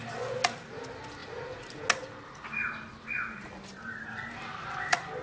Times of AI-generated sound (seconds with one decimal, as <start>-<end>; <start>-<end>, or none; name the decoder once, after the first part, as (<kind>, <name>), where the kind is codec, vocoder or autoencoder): none